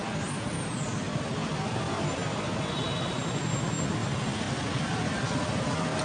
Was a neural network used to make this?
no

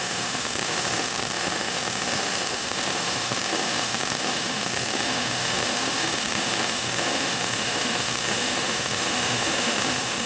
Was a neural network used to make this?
yes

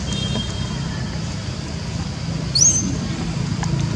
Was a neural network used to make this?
no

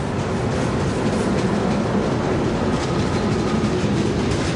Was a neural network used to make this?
no